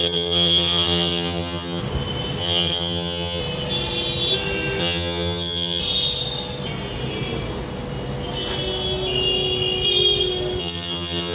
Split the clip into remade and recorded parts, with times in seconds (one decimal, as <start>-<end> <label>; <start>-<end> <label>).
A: 0.0-1.8 remade; 1.8-2.4 recorded; 2.4-3.4 remade; 3.4-4.8 recorded; 4.8-5.8 remade; 5.8-10.6 recorded; 10.6-11.3 remade